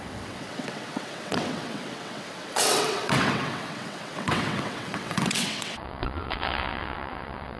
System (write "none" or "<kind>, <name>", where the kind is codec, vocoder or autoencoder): vocoder, WaveNeXt